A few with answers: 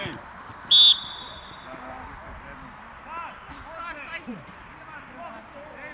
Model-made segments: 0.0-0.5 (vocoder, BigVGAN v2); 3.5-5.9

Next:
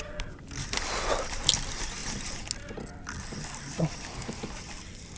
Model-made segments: none

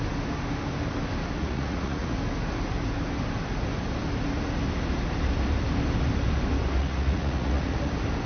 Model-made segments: 1.4-2.2 (vocoder, Vocos); 6.8-7.9

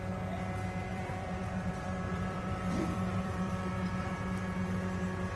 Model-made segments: 0.9-4.1 (vocoder, BigVGAN v2)

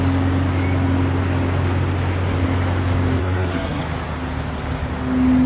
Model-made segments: 3.2-3.8 (codec, SNAC)

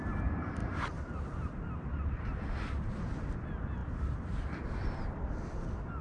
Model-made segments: none

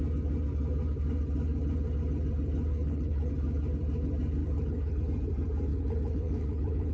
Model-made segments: 2.7-3.3 (codec, HILCodec); 4.4-5.0; 5.7-6.9